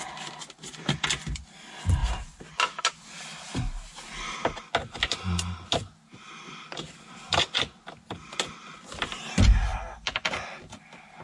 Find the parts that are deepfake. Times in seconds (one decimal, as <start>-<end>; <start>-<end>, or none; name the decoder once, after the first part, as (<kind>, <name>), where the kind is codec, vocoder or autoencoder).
none